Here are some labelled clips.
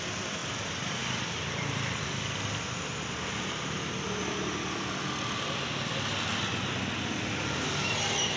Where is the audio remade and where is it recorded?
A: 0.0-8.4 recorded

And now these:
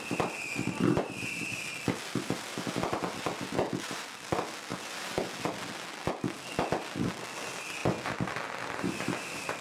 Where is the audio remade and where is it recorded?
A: 0.0-7.8 recorded; 7.8-9.6 remade

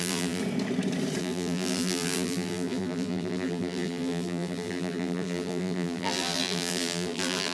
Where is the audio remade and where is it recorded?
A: 0.0-0.4 remade; 0.4-1.2 recorded; 1.2-7.5 remade

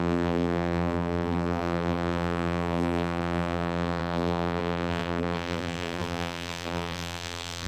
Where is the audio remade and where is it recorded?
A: 0.0-7.7 remade

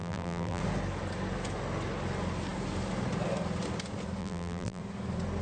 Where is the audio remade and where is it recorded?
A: 0.0-0.6 remade; 0.6-4.2 recorded; 4.2-4.8 remade; 4.8-5.4 recorded